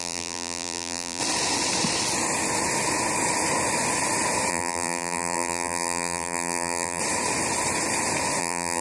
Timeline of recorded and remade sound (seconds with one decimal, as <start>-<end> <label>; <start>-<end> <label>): 0.0-1.2 remade; 1.2-4.5 recorded; 4.5-7.0 remade; 7.0-8.4 recorded; 8.4-8.8 remade

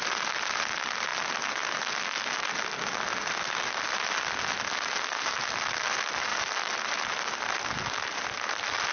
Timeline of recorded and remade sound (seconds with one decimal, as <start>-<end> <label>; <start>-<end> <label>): 0.0-6.3 recorded; 6.3-7.7 remade; 7.7-8.9 recorded

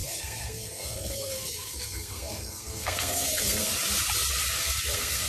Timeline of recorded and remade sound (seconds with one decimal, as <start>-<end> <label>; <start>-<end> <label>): 0.0-3.7 remade; 3.7-4.6 recorded; 4.6-5.3 remade

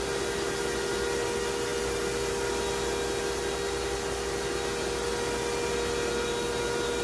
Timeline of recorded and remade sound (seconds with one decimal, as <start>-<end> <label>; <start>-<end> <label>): 0.0-7.0 recorded

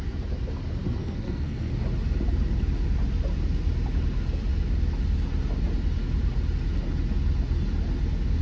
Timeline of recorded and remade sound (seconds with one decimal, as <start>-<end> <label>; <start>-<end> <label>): 0.0-1.0 recorded; 1.0-1.7 remade; 1.7-8.4 recorded